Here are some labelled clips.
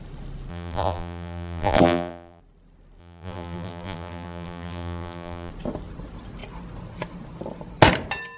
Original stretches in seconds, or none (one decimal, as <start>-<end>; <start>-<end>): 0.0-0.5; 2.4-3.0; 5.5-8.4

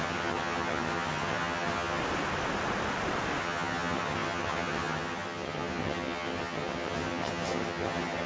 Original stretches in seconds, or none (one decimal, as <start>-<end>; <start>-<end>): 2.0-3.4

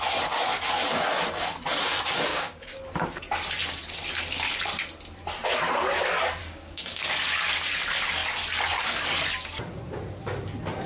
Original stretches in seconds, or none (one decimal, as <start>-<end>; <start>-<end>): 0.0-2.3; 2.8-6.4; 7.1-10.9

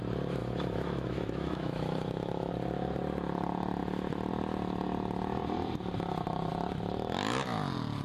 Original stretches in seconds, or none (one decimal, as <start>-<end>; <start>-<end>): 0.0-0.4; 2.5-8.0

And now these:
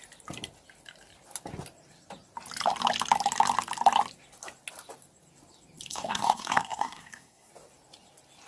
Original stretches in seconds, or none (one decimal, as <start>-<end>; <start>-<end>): 0.0-5.9; 7.5-8.5